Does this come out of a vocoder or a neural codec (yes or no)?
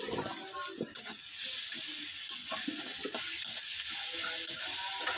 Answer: no